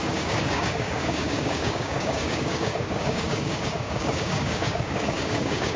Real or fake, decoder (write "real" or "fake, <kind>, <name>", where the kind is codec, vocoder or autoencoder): fake, codec, DAC